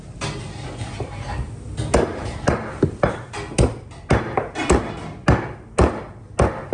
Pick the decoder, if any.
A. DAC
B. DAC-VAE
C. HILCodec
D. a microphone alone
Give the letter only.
D